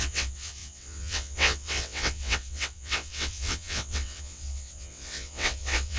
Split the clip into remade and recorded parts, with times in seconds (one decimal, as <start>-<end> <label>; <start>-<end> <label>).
0.0-6.0 remade